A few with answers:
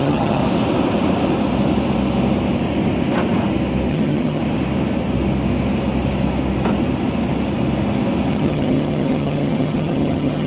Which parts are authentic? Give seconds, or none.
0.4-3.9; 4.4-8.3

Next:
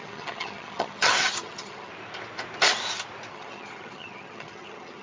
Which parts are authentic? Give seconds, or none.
1.9-3.3